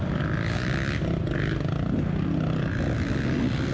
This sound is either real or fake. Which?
real